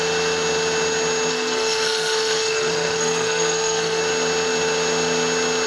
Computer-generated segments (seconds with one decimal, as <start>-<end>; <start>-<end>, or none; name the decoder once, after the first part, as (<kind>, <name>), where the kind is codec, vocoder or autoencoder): 1.3-4.0 (codec, SNAC)